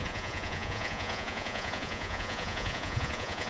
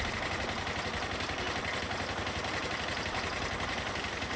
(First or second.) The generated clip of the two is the first